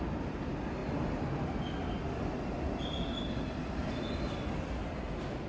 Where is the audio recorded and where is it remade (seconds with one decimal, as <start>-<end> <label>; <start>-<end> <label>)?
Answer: 0.0-5.5 recorded